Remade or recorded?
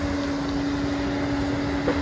recorded